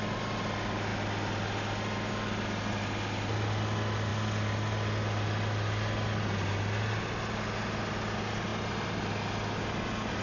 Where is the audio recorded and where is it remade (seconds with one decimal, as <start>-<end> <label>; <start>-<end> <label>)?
0.0-10.2 recorded